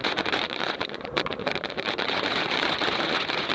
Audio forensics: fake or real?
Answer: fake